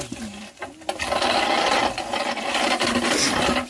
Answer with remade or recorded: recorded